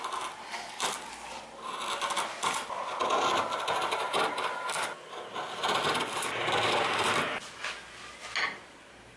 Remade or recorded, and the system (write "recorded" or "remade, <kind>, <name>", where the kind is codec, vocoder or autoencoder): recorded